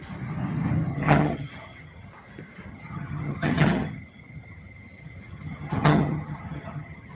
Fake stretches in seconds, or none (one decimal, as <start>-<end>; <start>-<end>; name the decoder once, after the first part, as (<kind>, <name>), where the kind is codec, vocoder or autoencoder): 0.9-2.1 (vocoder, HiFi-GAN); 2.7-7.1